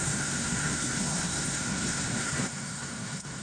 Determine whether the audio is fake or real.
fake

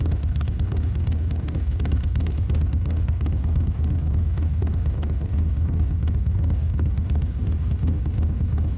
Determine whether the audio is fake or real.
fake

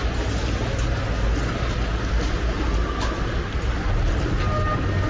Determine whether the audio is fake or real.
real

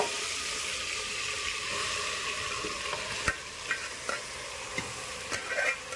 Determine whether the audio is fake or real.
real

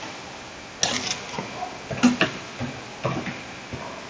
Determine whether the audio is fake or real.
real